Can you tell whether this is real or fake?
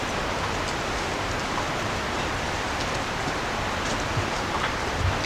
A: real